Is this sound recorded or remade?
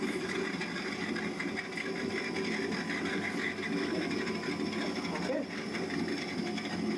recorded